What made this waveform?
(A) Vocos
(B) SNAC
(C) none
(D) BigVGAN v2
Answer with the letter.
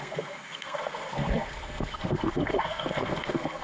B